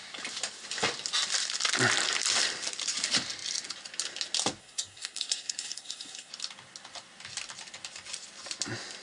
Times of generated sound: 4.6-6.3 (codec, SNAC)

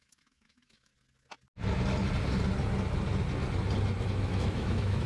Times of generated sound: 0.0-0.9 (autoencoder, DAC-VAE); 4.0-5.1

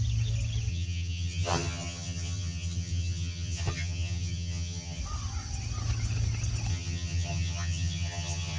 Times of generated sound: 0.7-5.0 (vocoder, HiFi-GAN); 6.7-8.6

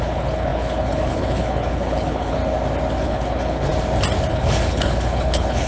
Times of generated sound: 0.0-2.4 (codec, HILCodec); 3.0-3.7; 4.3-5.7

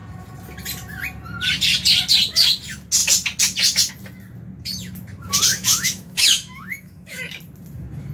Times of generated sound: 5.5-7.3 (autoencoder, DAC-VAE)

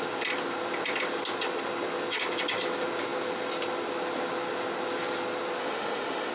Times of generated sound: 5.6-6.3 (autoencoder, DAC-VAE)